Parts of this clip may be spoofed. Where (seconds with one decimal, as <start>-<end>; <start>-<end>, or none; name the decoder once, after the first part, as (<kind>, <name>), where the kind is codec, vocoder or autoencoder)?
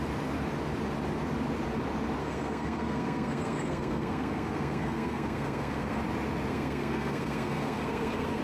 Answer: 2.2-6.0 (codec, SNAC); 6.5-8.4